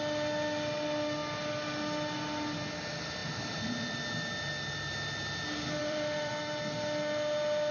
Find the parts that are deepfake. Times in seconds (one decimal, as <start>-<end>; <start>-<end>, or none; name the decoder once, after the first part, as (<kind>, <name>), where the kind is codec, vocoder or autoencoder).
5.8-6.3 (vocoder, BigVGAN v2)